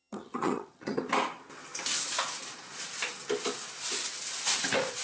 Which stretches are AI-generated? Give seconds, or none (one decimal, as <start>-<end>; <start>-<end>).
0.0-1.0